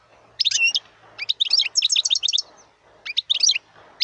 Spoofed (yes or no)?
no